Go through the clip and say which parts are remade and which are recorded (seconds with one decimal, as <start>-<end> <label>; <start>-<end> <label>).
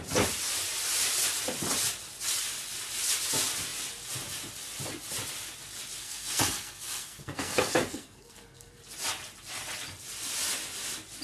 0.0-6.0 recorded; 6.0-8.8 remade; 8.8-11.2 recorded